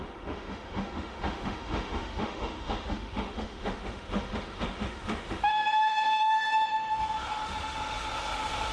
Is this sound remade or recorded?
remade